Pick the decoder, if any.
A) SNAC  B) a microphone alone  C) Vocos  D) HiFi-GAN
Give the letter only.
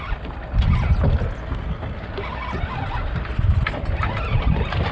B